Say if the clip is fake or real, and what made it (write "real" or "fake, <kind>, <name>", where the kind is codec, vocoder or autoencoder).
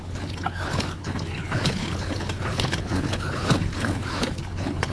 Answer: fake, codec, HILCodec